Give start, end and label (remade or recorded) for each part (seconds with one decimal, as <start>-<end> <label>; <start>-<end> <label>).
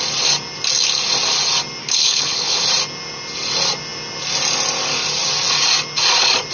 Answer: 0.0-1.8 recorded; 1.8-2.6 remade; 2.6-6.5 recorded